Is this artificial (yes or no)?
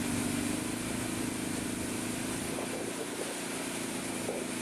no